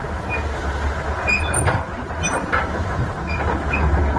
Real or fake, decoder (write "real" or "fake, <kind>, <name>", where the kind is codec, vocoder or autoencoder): real